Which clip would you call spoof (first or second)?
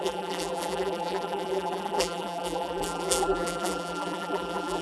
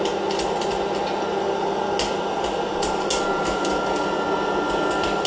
first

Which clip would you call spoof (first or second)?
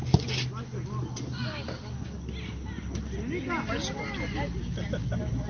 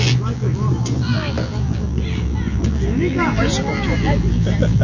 second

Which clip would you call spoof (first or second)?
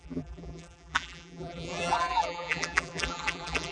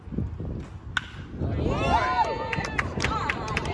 first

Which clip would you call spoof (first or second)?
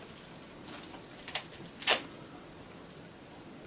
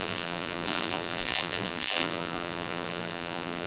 second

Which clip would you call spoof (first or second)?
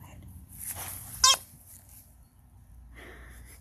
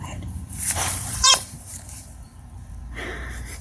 second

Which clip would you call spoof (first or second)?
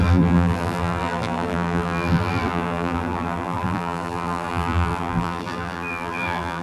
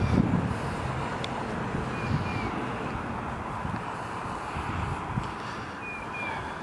first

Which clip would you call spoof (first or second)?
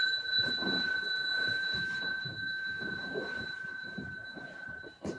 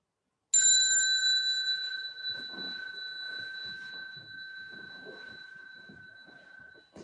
first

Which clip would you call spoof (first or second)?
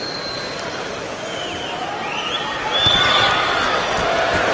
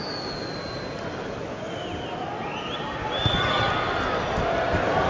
first